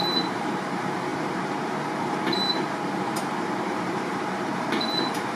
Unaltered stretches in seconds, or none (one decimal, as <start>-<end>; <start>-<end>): none